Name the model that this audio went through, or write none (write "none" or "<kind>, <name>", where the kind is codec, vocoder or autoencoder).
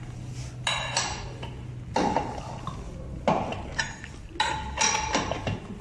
none